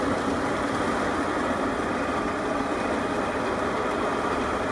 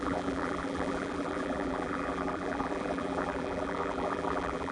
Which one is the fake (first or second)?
second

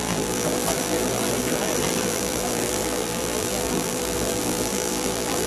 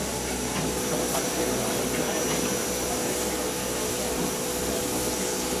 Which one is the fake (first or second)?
first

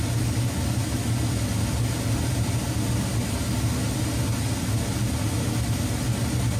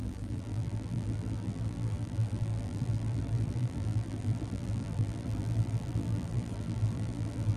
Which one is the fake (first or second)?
second